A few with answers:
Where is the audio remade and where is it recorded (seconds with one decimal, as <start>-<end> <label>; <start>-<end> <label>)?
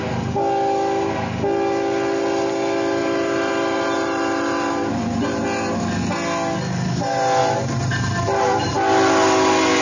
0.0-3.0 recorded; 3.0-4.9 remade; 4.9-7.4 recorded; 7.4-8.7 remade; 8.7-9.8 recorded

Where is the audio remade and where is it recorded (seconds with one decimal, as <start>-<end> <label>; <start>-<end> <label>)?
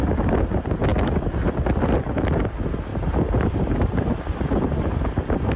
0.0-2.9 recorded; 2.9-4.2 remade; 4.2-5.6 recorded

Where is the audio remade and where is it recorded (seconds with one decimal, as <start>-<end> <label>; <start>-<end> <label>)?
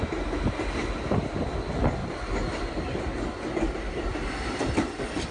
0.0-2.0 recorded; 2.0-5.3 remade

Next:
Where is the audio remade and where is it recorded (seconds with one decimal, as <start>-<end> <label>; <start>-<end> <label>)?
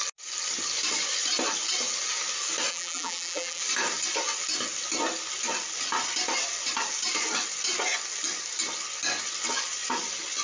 0.0-2.7 recorded; 2.7-3.6 remade; 3.6-10.4 recorded